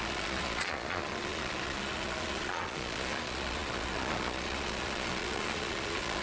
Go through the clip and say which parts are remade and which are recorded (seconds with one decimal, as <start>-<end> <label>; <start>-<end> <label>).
0.0-6.2 remade

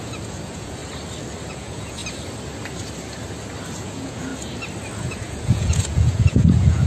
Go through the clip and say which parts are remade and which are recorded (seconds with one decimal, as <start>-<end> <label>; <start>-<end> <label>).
0.0-0.8 remade; 0.8-1.5 recorded; 1.5-2.0 remade; 2.0-3.7 recorded; 3.7-4.3 remade; 4.3-5.0 recorded; 5.0-6.9 remade

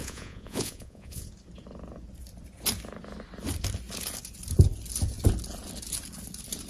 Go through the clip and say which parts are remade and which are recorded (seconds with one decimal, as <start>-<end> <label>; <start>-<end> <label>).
0.0-1.3 remade; 1.3-6.7 recorded

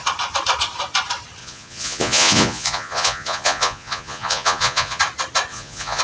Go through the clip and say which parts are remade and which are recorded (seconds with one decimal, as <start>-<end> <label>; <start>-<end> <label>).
0.0-1.4 recorded; 1.4-5.0 remade; 5.0-5.5 recorded; 5.5-6.0 remade

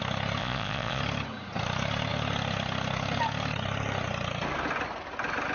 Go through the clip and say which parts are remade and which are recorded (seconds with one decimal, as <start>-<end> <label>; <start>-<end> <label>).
0.0-0.4 recorded; 0.4-1.0 remade; 1.0-5.5 recorded

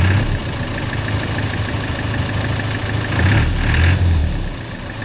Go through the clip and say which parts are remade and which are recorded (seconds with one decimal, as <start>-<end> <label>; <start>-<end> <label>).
0.0-5.0 recorded

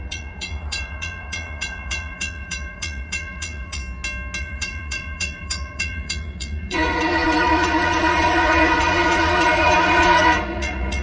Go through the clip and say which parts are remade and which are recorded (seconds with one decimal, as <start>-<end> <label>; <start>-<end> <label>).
0.0-3.8 remade; 3.8-4.4 recorded; 4.4-11.0 remade

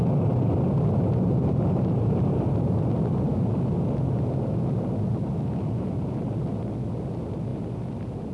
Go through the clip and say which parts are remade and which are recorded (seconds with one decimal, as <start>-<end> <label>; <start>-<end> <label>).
0.0-8.3 recorded